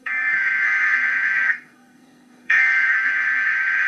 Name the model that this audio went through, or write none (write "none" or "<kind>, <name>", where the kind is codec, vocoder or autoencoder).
codec, SNAC